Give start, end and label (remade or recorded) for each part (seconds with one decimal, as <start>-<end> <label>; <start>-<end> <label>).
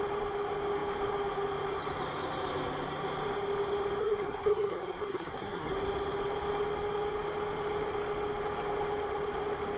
0.0-4.0 recorded; 4.0-5.7 remade; 5.7-9.8 recorded